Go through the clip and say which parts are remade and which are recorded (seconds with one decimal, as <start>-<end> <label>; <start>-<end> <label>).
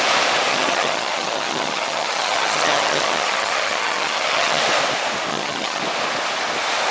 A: 0.0-0.5 recorded; 0.5-4.6 remade; 4.6-5.3 recorded; 5.3-5.8 remade; 5.8-6.9 recorded